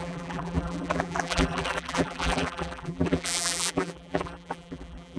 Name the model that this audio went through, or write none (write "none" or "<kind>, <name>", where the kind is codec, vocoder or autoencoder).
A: vocoder, BigVGAN v2